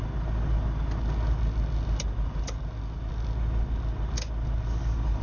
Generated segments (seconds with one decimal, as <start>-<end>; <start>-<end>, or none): none